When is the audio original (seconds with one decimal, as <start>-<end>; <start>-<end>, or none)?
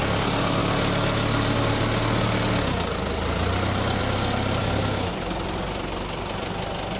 0.0-4.6; 5.1-7.0